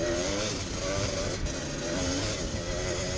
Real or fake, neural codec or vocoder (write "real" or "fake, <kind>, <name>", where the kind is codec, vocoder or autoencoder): fake, vocoder, BigVGAN v2